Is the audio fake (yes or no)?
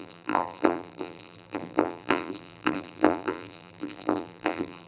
yes